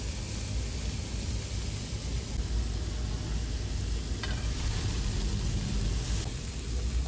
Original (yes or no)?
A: yes